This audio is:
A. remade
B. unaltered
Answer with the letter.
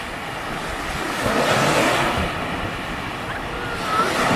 B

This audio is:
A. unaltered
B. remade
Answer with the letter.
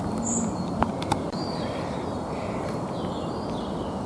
A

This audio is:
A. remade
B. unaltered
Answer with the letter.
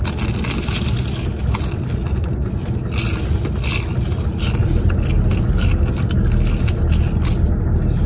B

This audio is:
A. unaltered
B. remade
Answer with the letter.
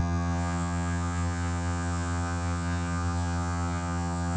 B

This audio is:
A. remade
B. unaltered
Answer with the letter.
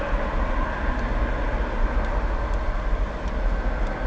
B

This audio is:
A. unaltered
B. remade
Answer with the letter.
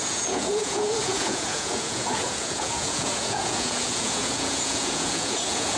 B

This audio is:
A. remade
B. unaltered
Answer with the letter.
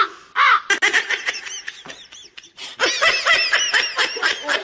B